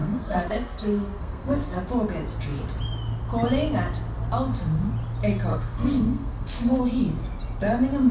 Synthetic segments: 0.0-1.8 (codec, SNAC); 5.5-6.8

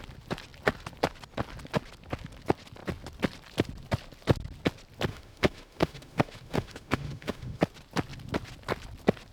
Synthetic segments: 5.1-7.6 (autoencoder, DAC-VAE)

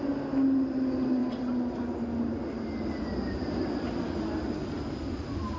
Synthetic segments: none